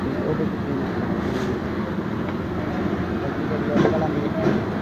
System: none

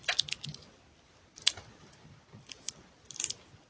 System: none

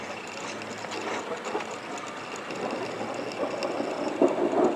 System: none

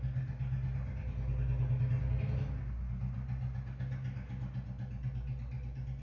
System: none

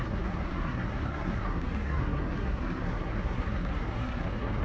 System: codec, SNAC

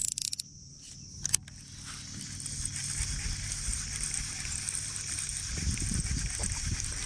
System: none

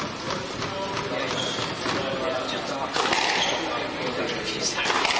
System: none